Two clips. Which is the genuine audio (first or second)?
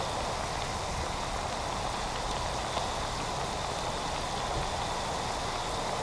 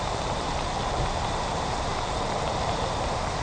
first